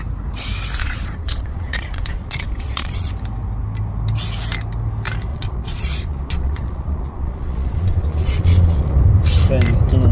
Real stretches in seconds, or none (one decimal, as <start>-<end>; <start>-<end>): 0.0-0.8; 3.1-5.3; 9.0-10.1